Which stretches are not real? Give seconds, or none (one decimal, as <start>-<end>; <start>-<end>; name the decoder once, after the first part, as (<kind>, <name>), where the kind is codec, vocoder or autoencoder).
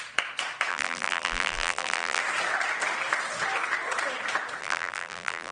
0.7-2.2 (vocoder, BigVGAN v2); 4.6-5.5